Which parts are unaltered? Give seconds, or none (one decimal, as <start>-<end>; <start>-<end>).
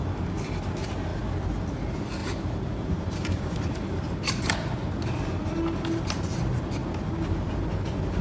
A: 0.0-2.2; 4.5-8.2